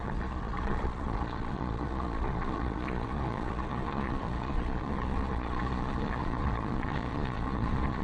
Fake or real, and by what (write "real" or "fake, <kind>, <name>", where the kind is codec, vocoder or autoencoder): fake, vocoder, Vocos